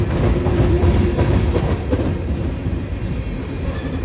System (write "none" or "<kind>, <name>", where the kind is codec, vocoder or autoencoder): vocoder, BigVGAN v2